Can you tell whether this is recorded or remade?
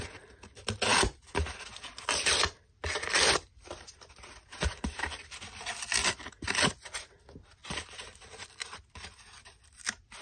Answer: recorded